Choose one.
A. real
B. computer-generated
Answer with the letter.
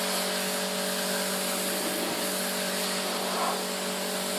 A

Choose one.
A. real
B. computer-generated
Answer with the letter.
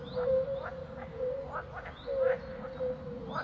A